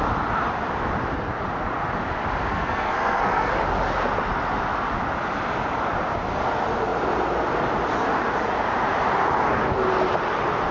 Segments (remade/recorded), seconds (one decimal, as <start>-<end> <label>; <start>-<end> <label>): 0.0-2.5 recorded; 2.5-3.5 remade; 3.5-10.7 recorded

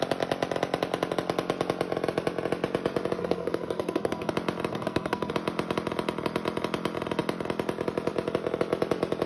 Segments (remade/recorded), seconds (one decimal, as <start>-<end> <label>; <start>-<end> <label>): 0.0-3.2 recorded; 3.2-4.3 remade; 4.3-4.7 recorded; 4.7-5.3 remade; 5.3-9.3 recorded

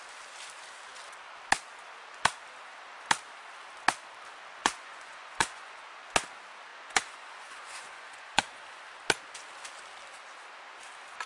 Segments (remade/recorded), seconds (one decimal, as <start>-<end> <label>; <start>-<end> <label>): 0.0-4.6 recorded; 4.6-5.8 remade; 5.8-6.7 recorded; 6.7-8.8 remade; 8.8-11.3 recorded